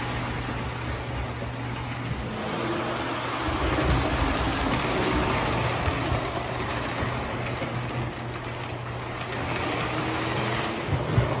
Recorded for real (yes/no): yes